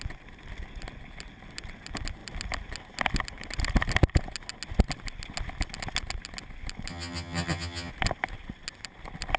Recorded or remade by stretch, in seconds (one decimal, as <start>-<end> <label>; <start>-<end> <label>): 0.0-6.9 recorded; 6.9-7.9 remade; 7.9-9.4 recorded